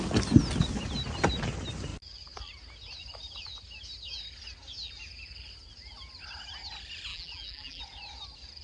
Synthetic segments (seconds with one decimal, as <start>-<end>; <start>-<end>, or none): 7.1-7.8